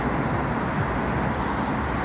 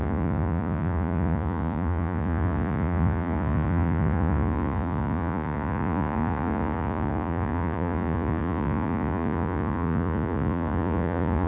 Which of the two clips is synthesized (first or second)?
second